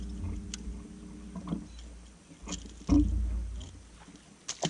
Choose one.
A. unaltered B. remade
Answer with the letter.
A